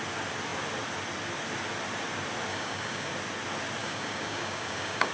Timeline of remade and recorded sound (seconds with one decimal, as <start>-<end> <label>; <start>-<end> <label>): 0.0-2.5 recorded; 2.5-3.1 remade; 3.1-3.8 recorded; 3.8-5.1 remade